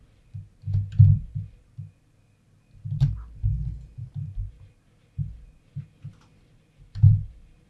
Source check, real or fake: real